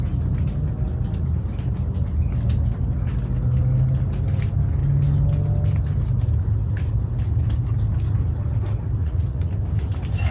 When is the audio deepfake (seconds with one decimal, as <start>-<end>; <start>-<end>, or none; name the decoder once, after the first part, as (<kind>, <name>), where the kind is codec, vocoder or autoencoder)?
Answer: 9.0-9.5 (vocoder, Vocos)